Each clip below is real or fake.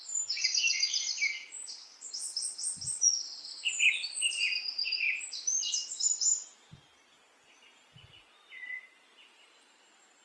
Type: real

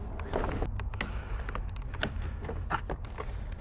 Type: real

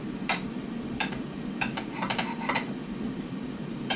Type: fake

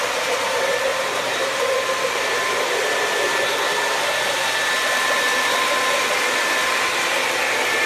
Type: real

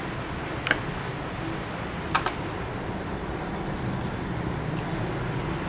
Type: real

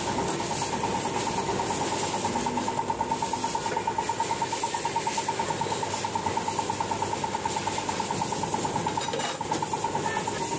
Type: real